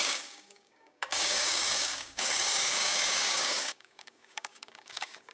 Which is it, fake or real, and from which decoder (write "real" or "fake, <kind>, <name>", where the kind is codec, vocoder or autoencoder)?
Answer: fake, codec, DAC